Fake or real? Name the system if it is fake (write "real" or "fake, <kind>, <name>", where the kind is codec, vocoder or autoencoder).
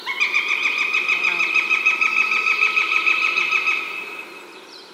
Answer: fake, vocoder, BigVGAN v2